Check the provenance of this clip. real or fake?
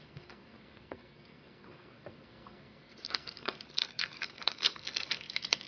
fake